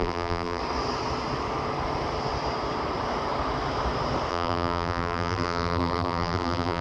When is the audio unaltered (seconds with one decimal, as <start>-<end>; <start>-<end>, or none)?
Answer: 0.6-4.3